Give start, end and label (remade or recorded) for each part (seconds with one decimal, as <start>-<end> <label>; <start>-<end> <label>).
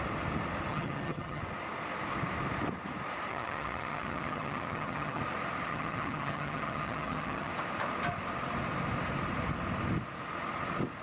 0.0-0.7 recorded; 0.7-1.4 remade; 1.4-3.3 recorded; 3.3-5.2 remade; 5.2-5.7 recorded; 5.7-7.5 remade; 7.5-11.0 recorded